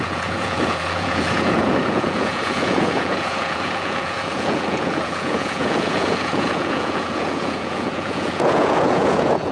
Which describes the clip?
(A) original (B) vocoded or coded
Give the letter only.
B